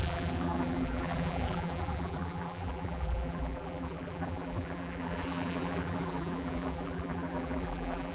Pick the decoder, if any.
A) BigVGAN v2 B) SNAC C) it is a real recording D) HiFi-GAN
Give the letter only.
A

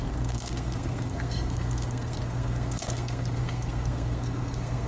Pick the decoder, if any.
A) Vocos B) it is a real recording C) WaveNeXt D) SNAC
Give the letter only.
D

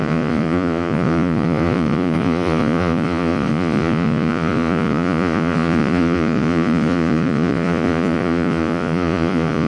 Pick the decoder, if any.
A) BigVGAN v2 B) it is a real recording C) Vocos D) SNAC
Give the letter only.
C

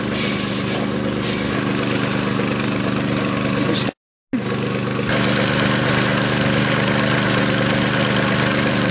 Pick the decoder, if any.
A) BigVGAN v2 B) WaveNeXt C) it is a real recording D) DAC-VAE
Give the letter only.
C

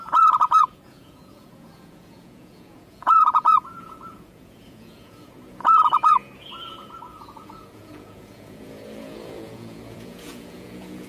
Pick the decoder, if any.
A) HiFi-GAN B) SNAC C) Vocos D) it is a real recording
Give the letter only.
C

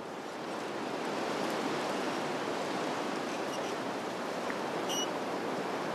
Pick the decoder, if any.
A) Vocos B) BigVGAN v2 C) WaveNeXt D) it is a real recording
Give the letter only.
B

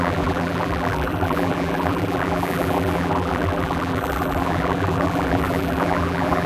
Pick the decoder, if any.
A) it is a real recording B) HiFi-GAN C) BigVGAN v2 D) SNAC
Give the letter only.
C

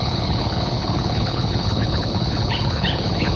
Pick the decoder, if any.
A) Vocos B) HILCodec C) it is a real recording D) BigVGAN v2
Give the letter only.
B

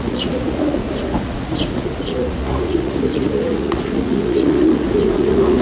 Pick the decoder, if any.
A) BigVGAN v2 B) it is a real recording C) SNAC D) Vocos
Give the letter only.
D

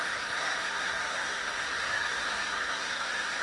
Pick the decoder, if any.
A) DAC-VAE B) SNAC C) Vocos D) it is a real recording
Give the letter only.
B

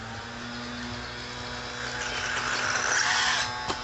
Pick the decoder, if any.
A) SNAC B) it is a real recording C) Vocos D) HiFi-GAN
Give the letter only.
B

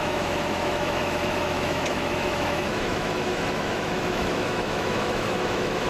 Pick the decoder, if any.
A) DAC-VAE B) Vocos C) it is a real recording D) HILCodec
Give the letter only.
A